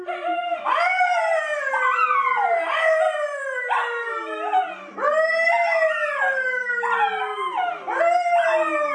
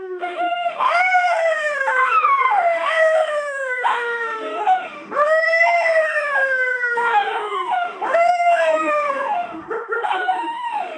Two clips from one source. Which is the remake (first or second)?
second